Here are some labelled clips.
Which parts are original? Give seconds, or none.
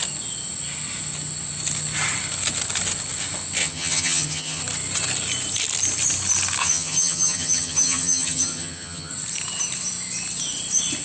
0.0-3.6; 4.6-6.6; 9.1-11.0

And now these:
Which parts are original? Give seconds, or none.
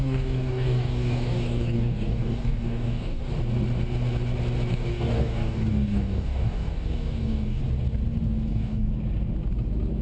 3.2-4.7; 7.6-8.5; 8.9-10.0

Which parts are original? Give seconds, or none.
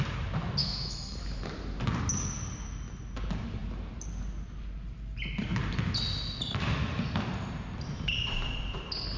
0.0-0.6; 1.4-9.2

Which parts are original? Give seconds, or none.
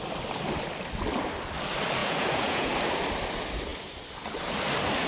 0.0-2.0; 2.7-5.1